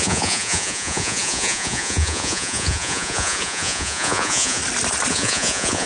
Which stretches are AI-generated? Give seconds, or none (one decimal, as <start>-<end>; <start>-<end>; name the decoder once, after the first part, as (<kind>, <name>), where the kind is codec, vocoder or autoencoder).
0.0-4.6 (vocoder, Vocos); 5.1-5.9